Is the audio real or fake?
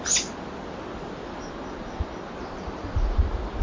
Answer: real